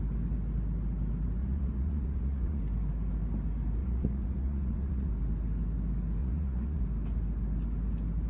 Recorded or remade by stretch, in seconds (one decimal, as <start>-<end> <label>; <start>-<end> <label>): 0.0-1.4 recorded; 1.4-2.6 remade; 2.6-3.8 recorded; 3.8-5.1 remade; 5.1-6.2 recorded; 6.2-6.8 remade; 6.8-8.3 recorded